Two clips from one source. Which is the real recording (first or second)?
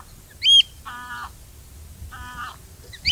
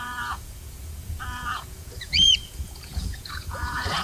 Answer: first